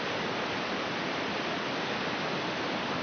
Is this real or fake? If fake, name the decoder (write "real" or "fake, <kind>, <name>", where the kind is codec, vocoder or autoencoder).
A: real